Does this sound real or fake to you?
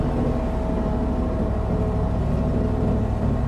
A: real